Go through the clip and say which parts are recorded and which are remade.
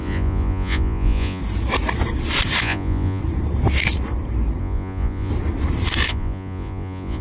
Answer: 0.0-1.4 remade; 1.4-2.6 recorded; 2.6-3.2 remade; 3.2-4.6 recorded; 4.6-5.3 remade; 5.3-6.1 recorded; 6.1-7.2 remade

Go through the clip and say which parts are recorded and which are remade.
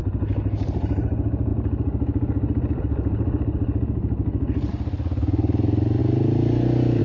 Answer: 0.0-7.0 recorded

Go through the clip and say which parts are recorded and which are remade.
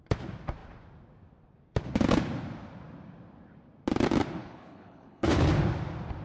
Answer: 0.0-4.4 recorded; 4.4-5.5 remade; 5.5-6.2 recorded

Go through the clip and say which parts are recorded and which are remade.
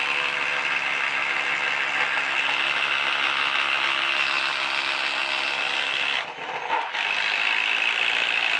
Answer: 0.0-8.6 recorded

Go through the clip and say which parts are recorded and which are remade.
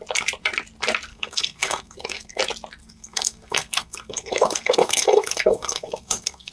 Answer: 0.0-1.1 recorded; 1.1-2.4 remade; 2.4-2.8 recorded; 2.8-6.5 remade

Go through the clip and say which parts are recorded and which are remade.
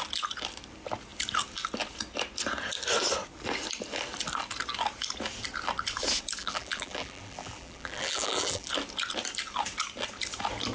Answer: 0.0-6.4 recorded; 6.4-8.7 remade; 8.7-10.7 recorded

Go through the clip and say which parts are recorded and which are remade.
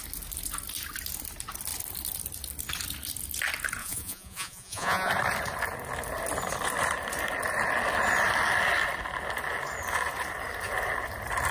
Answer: 0.0-3.8 recorded; 3.8-5.1 remade; 5.1-11.5 recorded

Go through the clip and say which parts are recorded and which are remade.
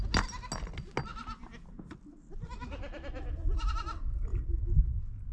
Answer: 0.0-1.1 recorded; 1.1-3.7 remade; 3.7-4.3 recorded; 4.3-4.8 remade; 4.8-5.3 recorded